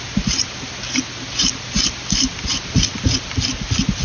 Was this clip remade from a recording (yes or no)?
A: no